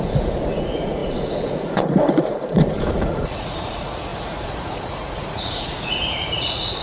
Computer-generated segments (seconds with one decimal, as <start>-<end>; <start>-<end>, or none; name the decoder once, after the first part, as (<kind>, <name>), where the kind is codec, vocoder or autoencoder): 0.0-6.8 (vocoder, Vocos)